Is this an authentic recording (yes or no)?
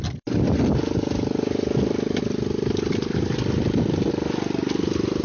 yes